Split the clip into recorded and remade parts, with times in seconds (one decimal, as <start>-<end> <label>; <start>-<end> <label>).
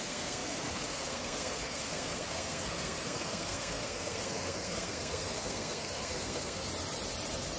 0.0-6.7 remade; 6.7-7.6 recorded